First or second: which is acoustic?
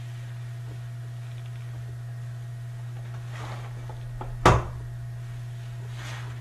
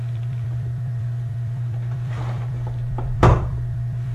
first